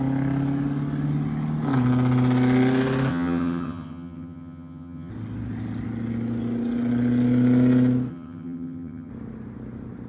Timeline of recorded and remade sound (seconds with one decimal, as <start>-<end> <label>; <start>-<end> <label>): 0.0-3.1 recorded; 3.1-5.1 remade; 5.1-8.1 recorded; 8.1-9.1 remade; 9.1-10.1 recorded